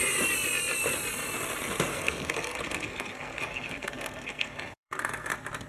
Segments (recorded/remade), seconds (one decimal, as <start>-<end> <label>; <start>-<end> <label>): 0.0-1.9 recorded; 1.9-5.3 remade; 5.3-5.7 recorded